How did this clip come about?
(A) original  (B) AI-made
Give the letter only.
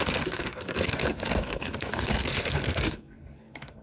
B